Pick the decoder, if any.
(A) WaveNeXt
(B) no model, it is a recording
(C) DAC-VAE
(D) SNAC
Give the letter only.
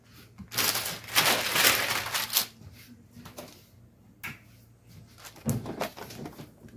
B